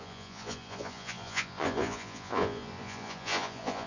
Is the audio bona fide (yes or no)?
no